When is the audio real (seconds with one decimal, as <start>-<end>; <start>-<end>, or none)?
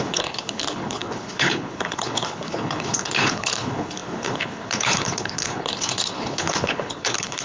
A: none